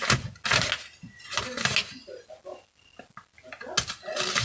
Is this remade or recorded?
recorded